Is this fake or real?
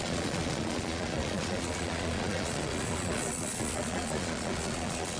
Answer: fake